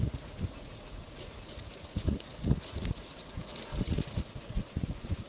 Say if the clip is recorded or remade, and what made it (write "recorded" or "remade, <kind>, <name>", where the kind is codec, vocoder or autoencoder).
remade, vocoder, Vocos